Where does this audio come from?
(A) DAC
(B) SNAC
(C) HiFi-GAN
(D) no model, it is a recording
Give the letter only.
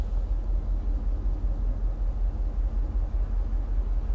D